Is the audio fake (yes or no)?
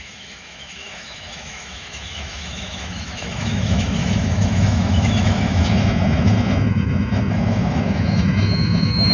yes